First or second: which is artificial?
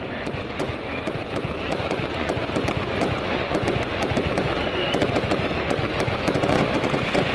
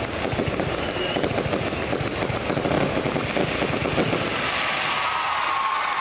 first